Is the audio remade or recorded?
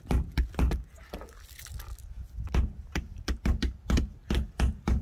recorded